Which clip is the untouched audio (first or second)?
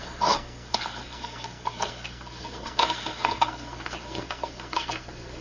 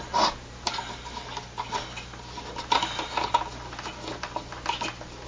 second